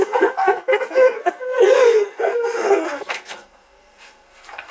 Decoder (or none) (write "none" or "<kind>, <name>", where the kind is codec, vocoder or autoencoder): codec, SNAC